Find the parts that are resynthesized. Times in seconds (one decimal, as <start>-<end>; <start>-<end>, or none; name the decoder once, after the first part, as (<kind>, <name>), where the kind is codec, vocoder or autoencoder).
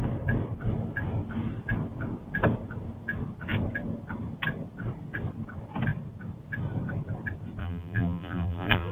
7.6-8.9 (vocoder, BigVGAN v2)